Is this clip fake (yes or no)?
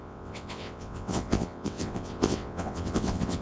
yes